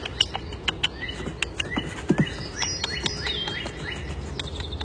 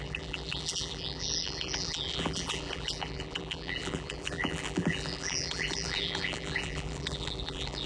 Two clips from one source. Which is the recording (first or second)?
first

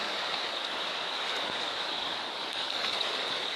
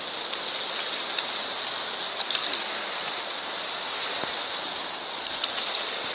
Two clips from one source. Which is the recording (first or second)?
second